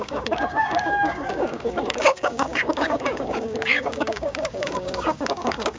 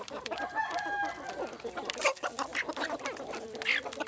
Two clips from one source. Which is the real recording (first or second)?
second